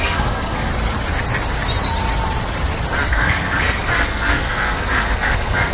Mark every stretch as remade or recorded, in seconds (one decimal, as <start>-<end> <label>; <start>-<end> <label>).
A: 0.0-0.7 remade; 0.7-3.1 recorded; 3.1-5.7 remade